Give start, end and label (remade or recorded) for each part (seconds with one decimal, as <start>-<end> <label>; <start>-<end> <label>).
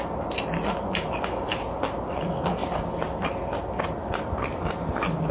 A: 0.0-5.3 recorded